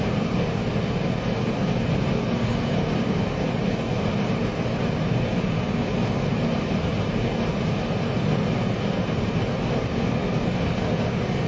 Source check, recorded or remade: recorded